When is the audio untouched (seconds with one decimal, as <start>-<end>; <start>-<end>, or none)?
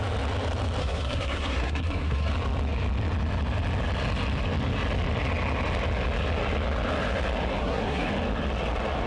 0.0-0.8; 2.3-7.6; 8.1-9.1